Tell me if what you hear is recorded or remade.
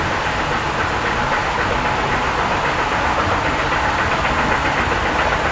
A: recorded